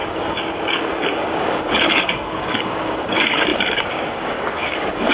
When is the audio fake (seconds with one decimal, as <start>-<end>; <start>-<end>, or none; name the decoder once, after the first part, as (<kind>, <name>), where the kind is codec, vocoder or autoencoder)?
0.0-5.1 (codec, DAC)